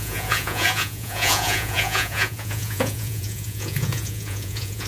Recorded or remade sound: remade